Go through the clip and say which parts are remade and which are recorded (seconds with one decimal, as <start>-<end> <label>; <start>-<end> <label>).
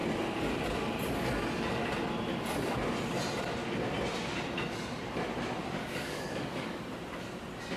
0.0-5.6 recorded; 5.6-6.8 remade; 6.8-7.8 recorded